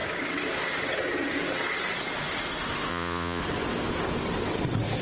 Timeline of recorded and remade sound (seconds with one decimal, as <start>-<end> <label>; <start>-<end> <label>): 0.0-2.9 recorded; 2.9-3.4 remade; 3.4-5.0 recorded